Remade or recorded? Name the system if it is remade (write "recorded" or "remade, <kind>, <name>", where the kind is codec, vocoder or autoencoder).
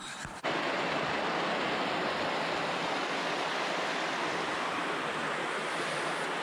recorded